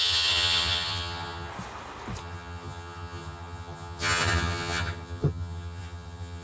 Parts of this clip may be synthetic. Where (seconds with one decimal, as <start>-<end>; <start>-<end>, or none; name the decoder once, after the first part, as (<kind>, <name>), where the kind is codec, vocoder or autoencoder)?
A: 0.0-1.5 (vocoder, HiFi-GAN); 2.2-6.4